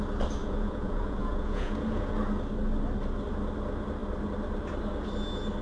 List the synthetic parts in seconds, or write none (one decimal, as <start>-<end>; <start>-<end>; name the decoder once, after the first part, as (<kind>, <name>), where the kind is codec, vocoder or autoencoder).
0.4-2.1 (vocoder, Vocos)